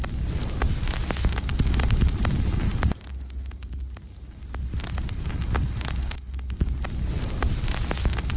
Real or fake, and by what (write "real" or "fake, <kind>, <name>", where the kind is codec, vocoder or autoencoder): real